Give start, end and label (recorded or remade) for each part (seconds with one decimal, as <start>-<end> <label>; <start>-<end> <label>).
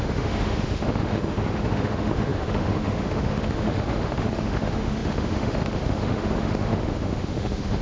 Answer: 0.0-7.8 remade